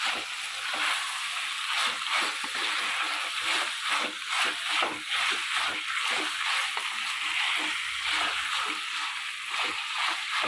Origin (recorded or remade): recorded